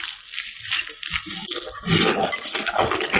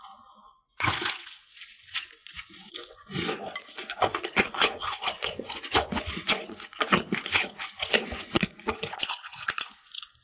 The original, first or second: first